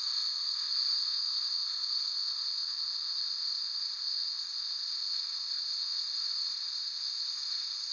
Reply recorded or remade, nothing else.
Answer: remade